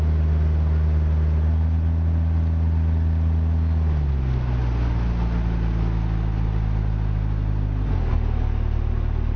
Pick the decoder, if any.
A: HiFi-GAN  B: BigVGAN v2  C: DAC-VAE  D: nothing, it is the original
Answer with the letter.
D